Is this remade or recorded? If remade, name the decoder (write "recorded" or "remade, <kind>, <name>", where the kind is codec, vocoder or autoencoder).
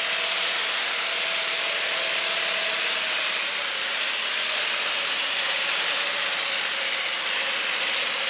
recorded